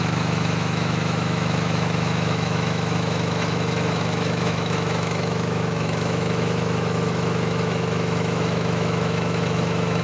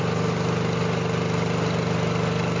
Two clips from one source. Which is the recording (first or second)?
second